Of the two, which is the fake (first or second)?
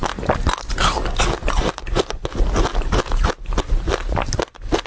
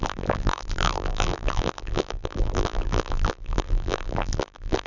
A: second